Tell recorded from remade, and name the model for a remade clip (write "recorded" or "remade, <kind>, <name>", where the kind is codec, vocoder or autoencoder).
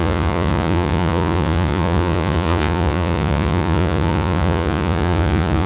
remade, vocoder, Vocos